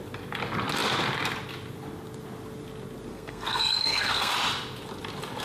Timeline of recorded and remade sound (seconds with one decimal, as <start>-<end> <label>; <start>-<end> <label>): 0.0-3.1 recorded; 3.1-4.3 remade; 4.3-5.4 recorded